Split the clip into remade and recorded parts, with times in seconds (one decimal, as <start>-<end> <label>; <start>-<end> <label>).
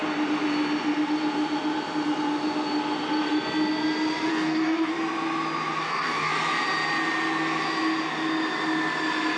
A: 0.0-4.3 recorded; 4.3-4.9 remade; 4.9-5.8 recorded; 5.8-6.3 remade; 6.3-9.4 recorded